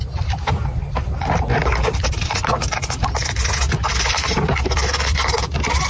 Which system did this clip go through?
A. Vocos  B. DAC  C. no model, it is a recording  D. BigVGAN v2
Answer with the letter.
C